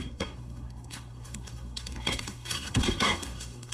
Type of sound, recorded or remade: remade